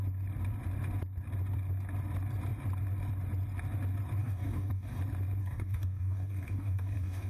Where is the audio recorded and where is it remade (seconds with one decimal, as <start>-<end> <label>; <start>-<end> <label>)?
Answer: 0.0-4.2 recorded; 4.2-5.0 remade; 5.0-5.4 recorded; 5.4-7.3 remade